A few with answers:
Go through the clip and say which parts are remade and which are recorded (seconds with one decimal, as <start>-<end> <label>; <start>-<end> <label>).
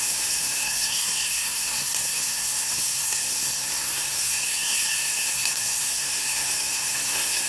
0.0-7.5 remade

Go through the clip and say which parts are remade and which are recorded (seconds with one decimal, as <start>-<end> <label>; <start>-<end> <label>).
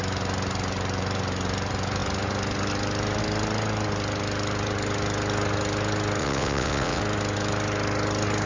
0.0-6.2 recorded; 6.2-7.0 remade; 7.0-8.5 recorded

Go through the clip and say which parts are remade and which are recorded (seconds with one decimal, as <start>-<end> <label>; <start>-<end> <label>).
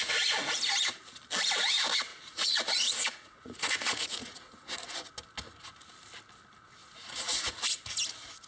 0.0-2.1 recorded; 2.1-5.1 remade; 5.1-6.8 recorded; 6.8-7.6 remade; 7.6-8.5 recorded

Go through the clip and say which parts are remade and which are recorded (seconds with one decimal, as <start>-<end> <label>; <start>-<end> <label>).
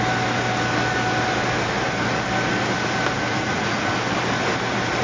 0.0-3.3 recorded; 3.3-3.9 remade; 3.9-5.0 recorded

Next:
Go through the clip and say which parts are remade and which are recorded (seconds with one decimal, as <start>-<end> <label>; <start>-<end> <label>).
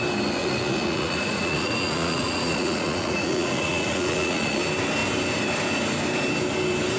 0.0-0.4 recorded; 0.4-4.6 remade; 4.6-7.0 recorded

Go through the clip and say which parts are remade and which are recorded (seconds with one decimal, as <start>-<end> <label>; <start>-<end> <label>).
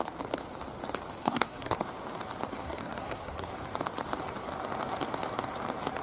0.0-1.2 recorded; 1.2-1.8 remade; 1.8-2.6 recorded; 2.6-3.5 remade; 3.5-6.0 recorded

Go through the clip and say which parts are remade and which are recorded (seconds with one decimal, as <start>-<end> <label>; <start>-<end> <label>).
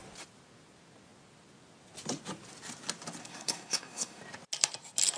0.0-3.2 recorded; 3.2-4.2 remade; 4.2-5.2 recorded